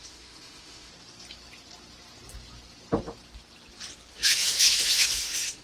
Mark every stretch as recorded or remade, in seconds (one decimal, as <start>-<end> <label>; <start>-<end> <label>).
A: 0.0-0.9 remade; 0.9-4.1 recorded; 4.1-5.6 remade